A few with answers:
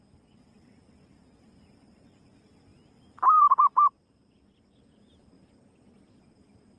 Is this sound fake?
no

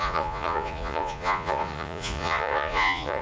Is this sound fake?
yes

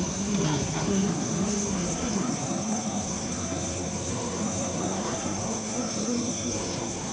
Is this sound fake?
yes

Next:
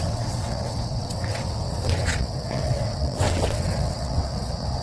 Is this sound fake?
yes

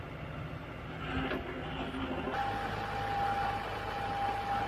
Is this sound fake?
no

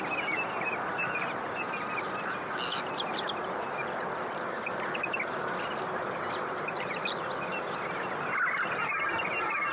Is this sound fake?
no